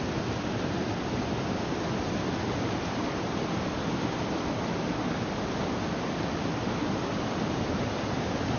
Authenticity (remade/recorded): recorded